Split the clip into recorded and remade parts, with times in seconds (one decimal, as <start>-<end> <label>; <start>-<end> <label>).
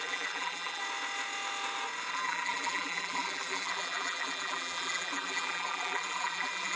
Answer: 0.0-0.8 remade; 0.8-2.1 recorded; 2.1-6.8 remade